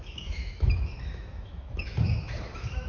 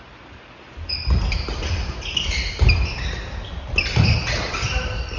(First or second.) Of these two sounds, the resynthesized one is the first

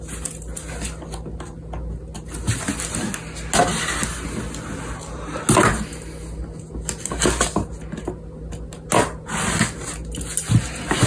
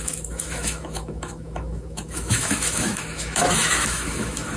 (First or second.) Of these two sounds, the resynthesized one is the second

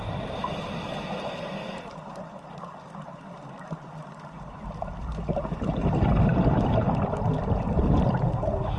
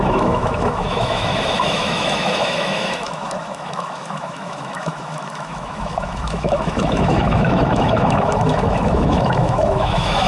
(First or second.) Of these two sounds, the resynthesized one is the second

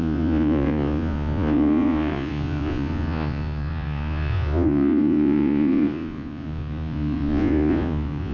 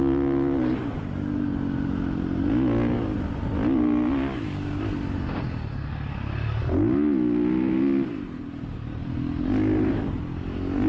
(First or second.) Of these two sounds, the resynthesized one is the first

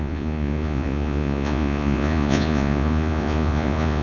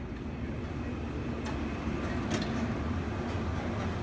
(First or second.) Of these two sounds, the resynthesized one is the first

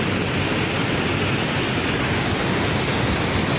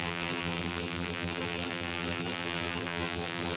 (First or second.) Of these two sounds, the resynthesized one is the second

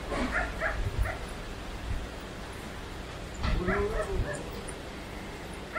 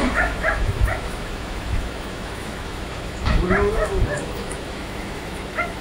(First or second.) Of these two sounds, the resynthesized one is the second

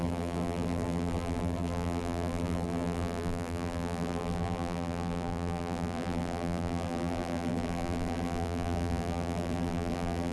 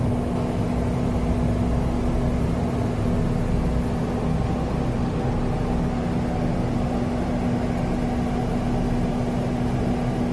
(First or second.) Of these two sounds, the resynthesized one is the first